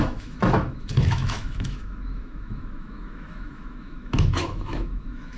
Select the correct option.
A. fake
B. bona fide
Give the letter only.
A